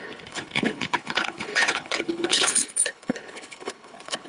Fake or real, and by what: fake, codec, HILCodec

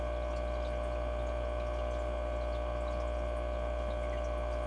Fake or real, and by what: real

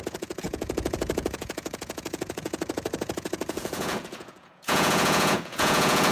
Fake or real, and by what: fake, vocoder, Vocos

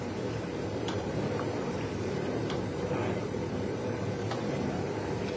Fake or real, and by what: fake, vocoder, BigVGAN v2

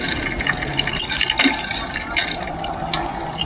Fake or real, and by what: real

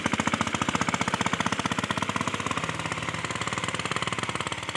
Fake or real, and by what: real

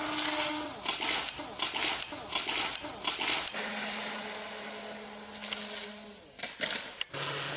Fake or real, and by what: real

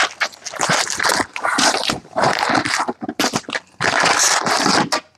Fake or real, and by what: real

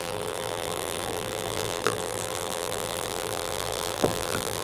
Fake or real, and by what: fake, vocoder, BigVGAN v2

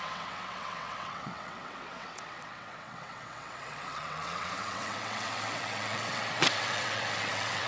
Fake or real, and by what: fake, vocoder, WaveNeXt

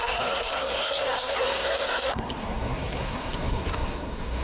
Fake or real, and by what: fake, codec, SNAC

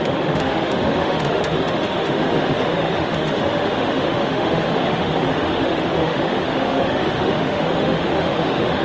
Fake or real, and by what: fake, autoencoder, DAC-VAE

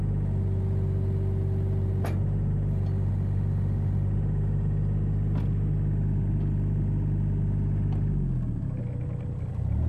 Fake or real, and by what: real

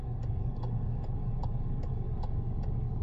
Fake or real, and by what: fake, codec, DAC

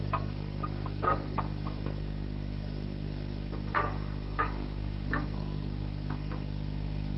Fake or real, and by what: fake, codec, SNAC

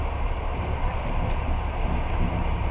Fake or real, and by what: real